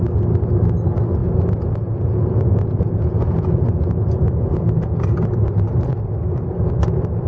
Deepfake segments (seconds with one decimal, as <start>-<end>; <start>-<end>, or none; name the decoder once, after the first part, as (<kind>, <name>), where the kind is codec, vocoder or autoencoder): 1.2-5.3 (vocoder, Vocos)